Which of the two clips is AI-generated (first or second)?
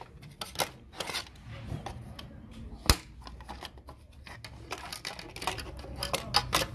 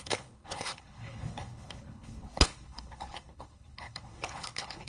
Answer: second